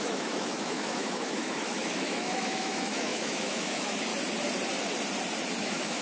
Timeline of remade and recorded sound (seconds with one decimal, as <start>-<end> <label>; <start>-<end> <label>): 0.0-4.1 remade; 4.1-5.6 recorded; 5.6-6.0 remade